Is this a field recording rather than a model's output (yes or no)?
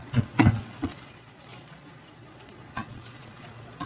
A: no